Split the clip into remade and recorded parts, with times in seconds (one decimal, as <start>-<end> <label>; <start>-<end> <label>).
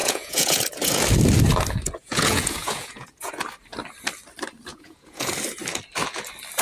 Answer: 0.0-1.0 remade; 1.0-2.0 recorded; 2.0-3.3 remade; 3.3-4.7 recorded; 4.7-5.3 remade; 5.3-6.6 recorded